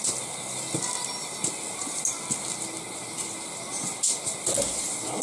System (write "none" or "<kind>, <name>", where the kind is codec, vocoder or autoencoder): none